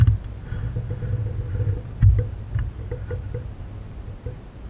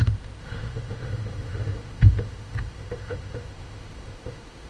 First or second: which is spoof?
second